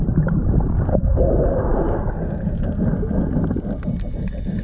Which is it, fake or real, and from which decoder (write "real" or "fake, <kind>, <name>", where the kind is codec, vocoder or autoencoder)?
real